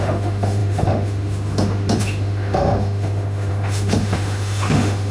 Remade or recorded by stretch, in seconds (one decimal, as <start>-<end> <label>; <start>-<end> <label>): 0.0-5.1 remade